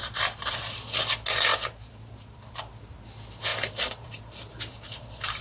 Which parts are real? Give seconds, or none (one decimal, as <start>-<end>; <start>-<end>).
0.6-1.5; 2.7-3.5